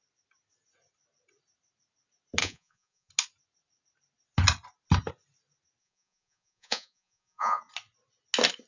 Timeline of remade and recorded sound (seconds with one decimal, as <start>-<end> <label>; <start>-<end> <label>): 0.0-2.4 recorded; 2.4-3.1 remade; 3.1-5.8 recorded; 5.8-7.6 remade; 7.6-8.7 recorded